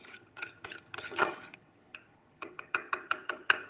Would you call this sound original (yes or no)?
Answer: no